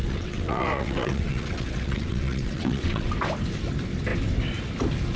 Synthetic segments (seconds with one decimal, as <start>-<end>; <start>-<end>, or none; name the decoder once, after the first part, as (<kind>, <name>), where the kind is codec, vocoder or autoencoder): 0.0-3.1 (vocoder, WaveNeXt)